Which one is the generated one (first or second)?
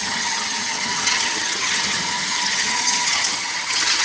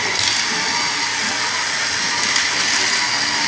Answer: first